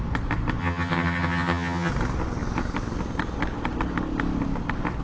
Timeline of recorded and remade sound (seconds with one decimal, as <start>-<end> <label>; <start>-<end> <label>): 0.0-0.6 recorded; 0.6-1.9 remade; 1.9-5.0 recorded